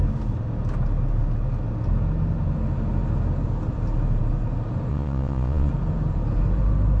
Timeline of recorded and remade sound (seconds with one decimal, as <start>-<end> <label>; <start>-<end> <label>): 0.0-4.9 recorded; 4.9-5.7 remade; 5.7-7.0 recorded